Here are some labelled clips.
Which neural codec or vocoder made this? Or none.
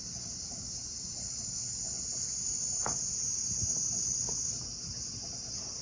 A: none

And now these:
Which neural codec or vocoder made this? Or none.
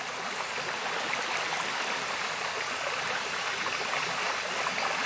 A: none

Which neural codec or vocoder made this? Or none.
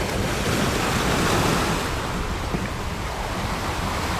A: none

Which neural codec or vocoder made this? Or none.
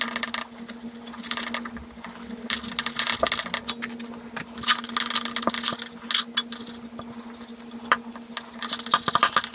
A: none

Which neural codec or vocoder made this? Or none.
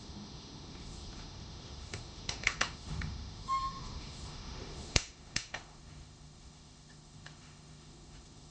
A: autoencoder, DAC-VAE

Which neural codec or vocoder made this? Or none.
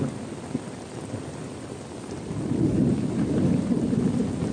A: none